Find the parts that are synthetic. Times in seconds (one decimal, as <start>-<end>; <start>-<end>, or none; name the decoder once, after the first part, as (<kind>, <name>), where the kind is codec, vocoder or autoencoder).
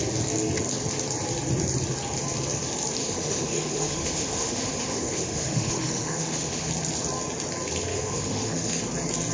3.0-6.7 (autoencoder, DAC-VAE); 7.9-8.8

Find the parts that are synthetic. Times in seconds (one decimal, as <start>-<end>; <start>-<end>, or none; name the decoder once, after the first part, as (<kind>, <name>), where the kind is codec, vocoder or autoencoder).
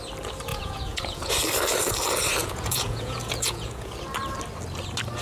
0.5-1.3 (vocoder, Vocos); 2.4-3.9